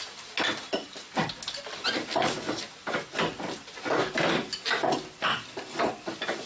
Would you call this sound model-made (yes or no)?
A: no